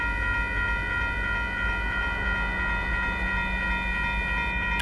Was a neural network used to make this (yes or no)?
no